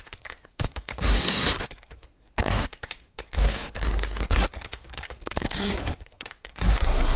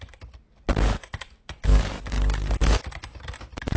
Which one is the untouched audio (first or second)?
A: second